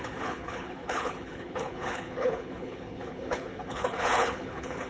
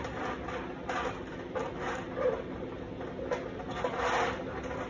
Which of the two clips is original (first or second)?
second